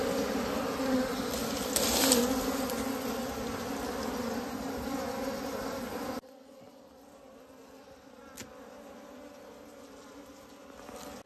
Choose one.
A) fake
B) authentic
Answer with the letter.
B